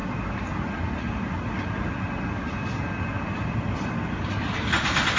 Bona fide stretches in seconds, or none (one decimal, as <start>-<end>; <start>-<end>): 0.0-5.2